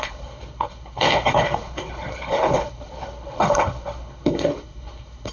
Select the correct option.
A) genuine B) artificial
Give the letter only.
B